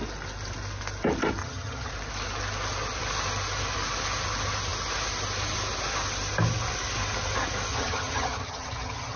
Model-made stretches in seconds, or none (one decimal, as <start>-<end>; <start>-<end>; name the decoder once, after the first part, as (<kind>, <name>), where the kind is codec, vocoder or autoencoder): 1.4-1.9 (vocoder, HiFi-GAN); 7.7-9.2